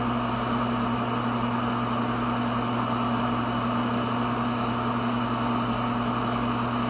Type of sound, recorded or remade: recorded